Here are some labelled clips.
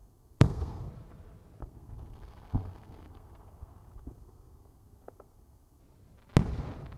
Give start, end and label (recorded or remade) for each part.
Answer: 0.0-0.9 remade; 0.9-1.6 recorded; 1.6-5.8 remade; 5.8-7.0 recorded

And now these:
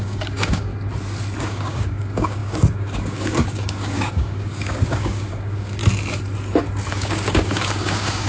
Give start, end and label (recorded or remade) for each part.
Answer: 0.0-0.7 remade; 0.7-1.4 recorded; 1.4-5.8 remade; 5.8-6.9 recorded; 6.9-8.3 remade